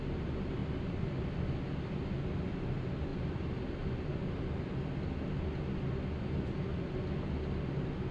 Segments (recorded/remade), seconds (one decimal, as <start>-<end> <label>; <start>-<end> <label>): 0.0-3.1 recorded; 3.1-4.3 remade; 4.3-6.7 recorded; 6.7-8.1 remade